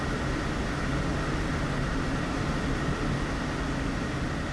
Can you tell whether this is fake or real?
real